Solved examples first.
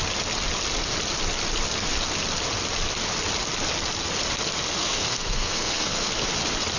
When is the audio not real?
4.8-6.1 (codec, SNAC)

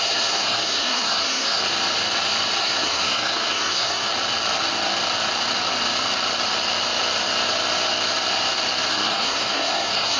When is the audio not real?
0.0-1.6 (codec, SNAC); 2.6-4.1; 8.9-10.2

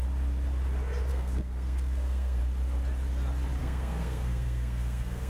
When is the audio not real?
1.1-2.4 (codec, SNAC); 3.6-5.3

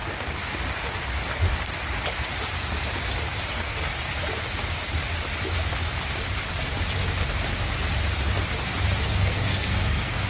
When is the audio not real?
3.5-3.9 (codec, SNAC); 9.1-10.3